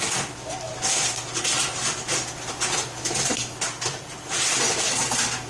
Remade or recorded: recorded